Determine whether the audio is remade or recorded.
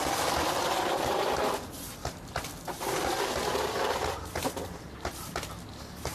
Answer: remade